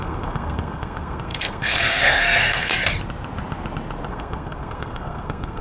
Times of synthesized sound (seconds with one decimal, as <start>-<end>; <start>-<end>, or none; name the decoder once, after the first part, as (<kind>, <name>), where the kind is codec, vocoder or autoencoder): 0.0-2.7 (codec, SNAC); 4.1-5.6